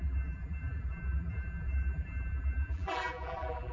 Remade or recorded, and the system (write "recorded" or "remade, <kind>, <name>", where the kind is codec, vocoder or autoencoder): remade, vocoder, BigVGAN v2